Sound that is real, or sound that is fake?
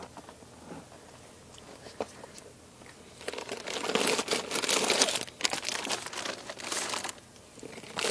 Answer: real